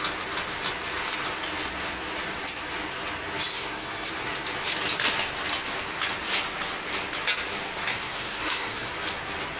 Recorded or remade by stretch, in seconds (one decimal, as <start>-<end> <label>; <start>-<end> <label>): 0.0-3.5 recorded; 3.5-4.1 remade; 4.1-7.9 recorded; 7.9-8.9 remade; 8.9-9.6 recorded